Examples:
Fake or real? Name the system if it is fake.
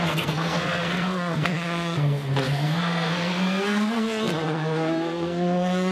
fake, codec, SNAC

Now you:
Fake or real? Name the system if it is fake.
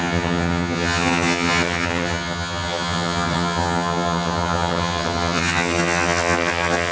fake, vocoder, HiFi-GAN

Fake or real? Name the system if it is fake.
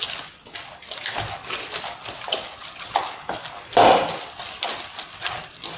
real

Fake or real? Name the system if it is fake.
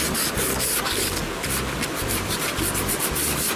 fake, vocoder, BigVGAN v2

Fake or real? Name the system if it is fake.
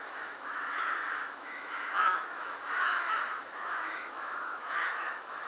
fake, autoencoder, DAC-VAE